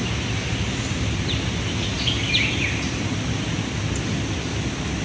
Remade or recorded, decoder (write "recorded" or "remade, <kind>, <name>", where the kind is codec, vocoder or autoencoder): recorded